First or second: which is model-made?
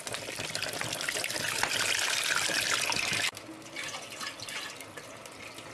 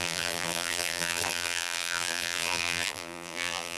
second